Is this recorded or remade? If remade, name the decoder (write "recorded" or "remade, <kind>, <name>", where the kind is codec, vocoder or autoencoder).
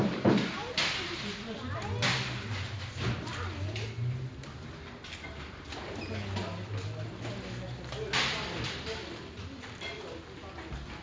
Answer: recorded